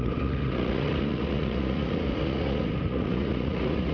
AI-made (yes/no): yes